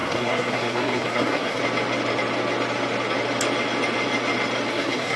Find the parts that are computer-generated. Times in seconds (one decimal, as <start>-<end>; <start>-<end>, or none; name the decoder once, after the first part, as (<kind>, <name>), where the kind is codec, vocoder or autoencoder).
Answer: 0.0-1.6 (codec, SNAC); 4.7-5.2